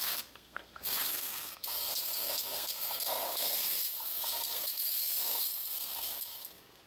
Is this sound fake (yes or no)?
yes